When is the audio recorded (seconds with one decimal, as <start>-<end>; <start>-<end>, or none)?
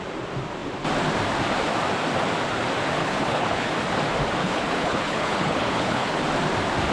0.0-3.0; 3.7-4.4; 6.2-6.9